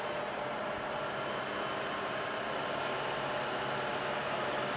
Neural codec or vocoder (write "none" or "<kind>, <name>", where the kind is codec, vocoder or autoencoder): none